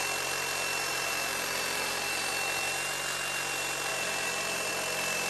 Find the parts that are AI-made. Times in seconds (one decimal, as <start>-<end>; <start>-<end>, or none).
0.9-2.3; 3.9-4.7